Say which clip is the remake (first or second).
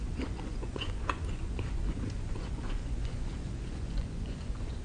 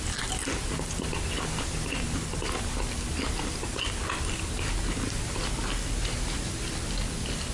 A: first